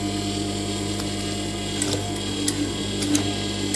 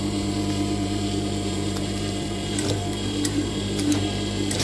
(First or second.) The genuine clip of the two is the first